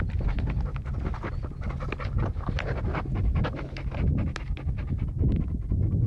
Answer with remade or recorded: recorded